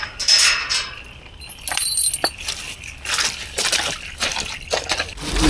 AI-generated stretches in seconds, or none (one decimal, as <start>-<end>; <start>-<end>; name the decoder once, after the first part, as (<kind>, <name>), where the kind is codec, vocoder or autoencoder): none